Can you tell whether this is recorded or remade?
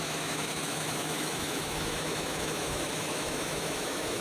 remade